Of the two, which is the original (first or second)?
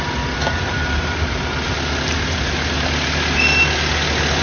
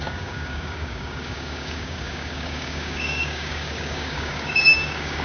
first